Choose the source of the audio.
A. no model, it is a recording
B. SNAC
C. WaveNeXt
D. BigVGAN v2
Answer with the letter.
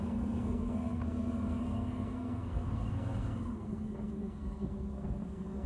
B